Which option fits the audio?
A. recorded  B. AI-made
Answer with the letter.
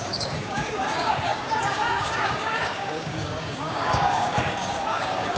B